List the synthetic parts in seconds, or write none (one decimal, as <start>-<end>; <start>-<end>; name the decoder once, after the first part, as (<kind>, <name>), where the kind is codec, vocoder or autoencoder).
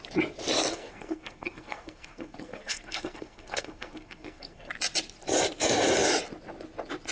0.7-4.7 (codec, SNAC)